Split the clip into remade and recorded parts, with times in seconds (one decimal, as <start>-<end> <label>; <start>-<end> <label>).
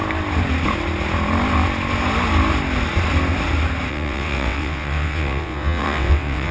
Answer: 0.0-3.9 recorded; 3.9-6.5 remade